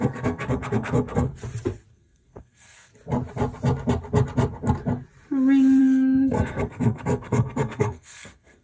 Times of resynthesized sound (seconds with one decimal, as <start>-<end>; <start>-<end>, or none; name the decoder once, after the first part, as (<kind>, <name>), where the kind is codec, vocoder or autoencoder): 0.0-1.3 (codec, SNAC); 1.9-2.9; 5.8-8.6